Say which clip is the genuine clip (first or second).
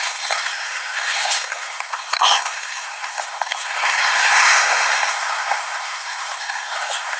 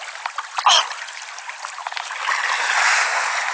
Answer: second